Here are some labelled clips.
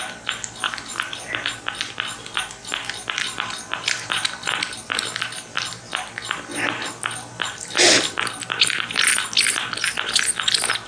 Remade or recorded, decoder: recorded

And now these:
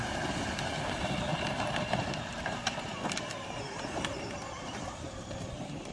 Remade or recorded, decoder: remade, vocoder, BigVGAN v2